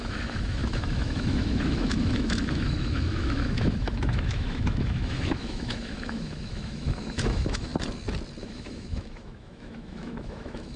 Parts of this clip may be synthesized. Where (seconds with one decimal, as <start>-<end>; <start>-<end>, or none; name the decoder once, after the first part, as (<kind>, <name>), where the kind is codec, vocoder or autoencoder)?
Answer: 0.0-7.7 (autoencoder, DAC-VAE); 8.4-10.8